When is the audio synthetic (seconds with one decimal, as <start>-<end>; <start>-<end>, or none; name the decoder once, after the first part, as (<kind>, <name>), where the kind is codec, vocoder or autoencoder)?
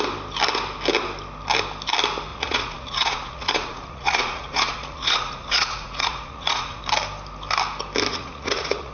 2.3-6.8 (vocoder, Vocos); 8.1-8.9